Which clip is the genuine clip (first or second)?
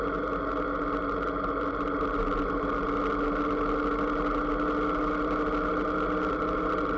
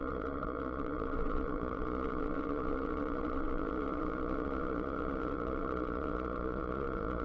first